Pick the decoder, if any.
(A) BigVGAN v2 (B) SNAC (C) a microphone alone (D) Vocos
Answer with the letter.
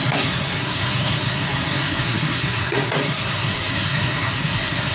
B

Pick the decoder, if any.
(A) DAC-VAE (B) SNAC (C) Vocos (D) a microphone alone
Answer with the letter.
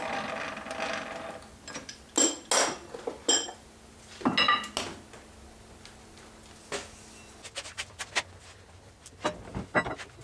D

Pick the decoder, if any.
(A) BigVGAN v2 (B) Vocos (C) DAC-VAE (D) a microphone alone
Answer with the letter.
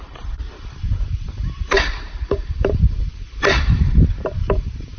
A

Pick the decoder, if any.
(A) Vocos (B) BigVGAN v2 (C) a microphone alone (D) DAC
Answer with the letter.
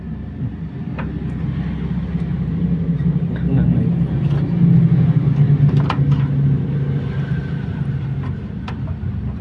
C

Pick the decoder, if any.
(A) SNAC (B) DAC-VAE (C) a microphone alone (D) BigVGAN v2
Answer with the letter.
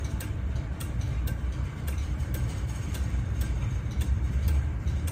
D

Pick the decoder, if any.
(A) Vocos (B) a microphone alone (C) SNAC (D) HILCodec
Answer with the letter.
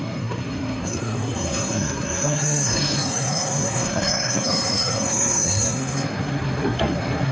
C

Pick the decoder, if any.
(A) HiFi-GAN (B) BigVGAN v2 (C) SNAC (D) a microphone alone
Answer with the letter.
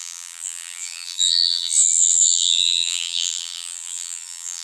B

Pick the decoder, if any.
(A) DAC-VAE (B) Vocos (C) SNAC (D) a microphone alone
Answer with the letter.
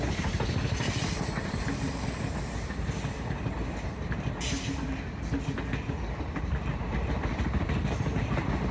D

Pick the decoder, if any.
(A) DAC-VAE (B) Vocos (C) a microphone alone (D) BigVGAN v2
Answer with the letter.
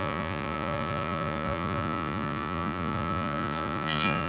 B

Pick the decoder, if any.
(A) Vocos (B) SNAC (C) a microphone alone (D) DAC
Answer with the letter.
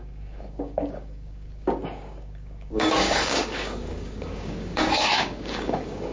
D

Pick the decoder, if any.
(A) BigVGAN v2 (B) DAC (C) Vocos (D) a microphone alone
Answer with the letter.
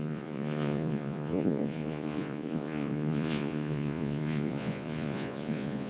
C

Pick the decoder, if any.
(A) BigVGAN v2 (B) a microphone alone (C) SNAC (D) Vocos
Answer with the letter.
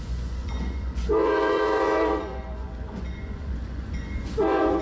D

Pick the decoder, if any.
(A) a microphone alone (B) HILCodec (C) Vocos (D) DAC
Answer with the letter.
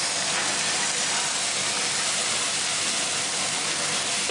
A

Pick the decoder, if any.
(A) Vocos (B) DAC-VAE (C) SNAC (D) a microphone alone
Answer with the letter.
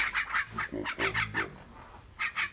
D